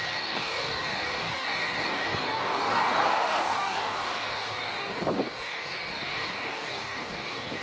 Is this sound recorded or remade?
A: remade